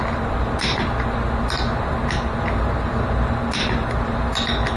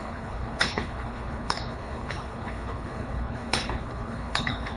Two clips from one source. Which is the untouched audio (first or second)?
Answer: first